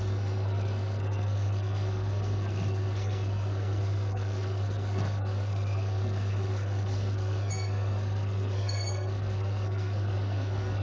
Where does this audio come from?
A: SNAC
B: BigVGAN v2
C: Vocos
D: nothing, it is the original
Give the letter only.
A